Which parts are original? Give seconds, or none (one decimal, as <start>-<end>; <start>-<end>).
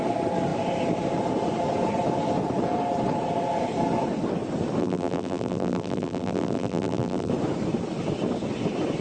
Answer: 0.0-4.8; 7.3-9.0